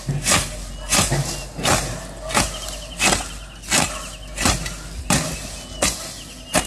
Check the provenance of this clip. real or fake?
real